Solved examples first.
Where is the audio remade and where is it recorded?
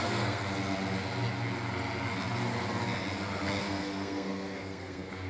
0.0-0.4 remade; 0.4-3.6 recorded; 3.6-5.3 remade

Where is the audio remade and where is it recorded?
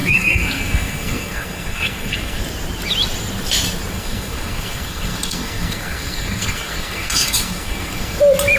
0.0-2.4 remade; 2.4-3.9 recorded; 3.9-8.2 remade; 8.2-8.6 recorded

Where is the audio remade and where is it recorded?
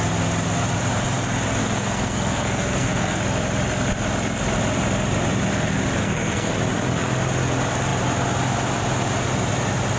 0.0-1.6 recorded; 1.6-3.2 remade; 3.2-6.0 recorded; 6.0-6.5 remade; 6.5-10.0 recorded